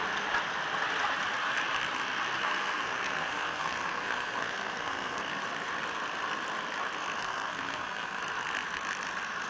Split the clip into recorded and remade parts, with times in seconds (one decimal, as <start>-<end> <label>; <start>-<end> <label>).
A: 0.0-2.4 recorded; 2.4-5.2 remade; 5.2-7.2 recorded; 7.2-8.2 remade; 8.2-9.5 recorded